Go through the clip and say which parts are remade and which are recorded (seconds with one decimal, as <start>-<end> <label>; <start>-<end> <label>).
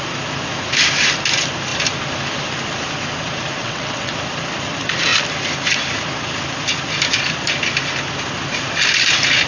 0.0-3.6 recorded; 3.6-4.1 remade; 4.1-9.5 recorded